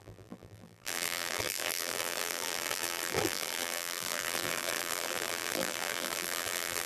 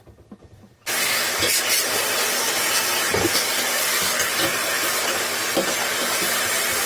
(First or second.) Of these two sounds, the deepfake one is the first